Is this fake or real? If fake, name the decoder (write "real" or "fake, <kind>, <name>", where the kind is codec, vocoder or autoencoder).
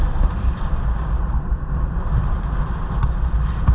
real